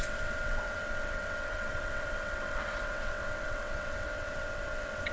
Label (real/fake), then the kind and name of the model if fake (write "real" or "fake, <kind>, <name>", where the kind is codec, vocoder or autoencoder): fake, vocoder, WaveNeXt